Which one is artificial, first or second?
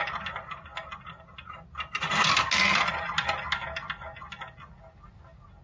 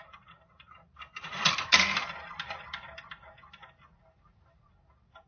second